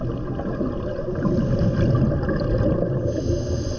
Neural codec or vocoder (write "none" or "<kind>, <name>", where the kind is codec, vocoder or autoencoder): none